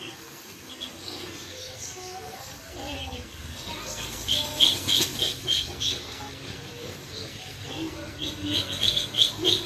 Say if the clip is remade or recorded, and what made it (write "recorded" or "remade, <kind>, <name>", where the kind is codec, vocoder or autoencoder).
remade, codec, SNAC